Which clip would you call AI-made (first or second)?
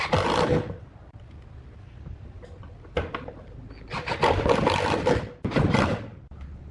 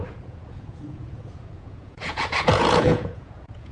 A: second